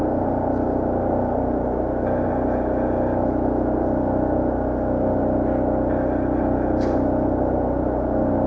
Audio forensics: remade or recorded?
recorded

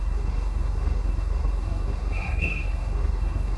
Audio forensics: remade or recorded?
remade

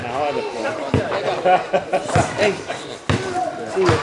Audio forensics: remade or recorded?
recorded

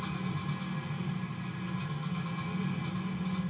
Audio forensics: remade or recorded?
recorded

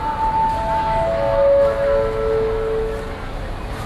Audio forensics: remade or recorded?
recorded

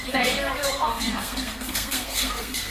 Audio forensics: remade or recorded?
remade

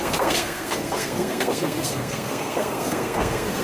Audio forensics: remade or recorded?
remade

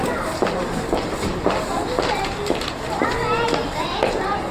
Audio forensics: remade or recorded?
recorded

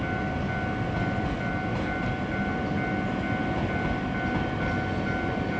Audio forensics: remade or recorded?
recorded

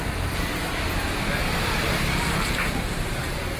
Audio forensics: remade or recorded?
recorded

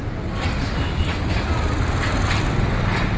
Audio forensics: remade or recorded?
recorded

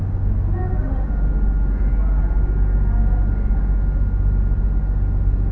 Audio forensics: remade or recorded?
recorded